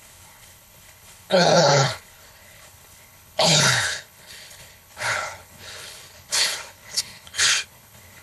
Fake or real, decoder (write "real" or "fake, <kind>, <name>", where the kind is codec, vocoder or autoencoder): fake, codec, HILCodec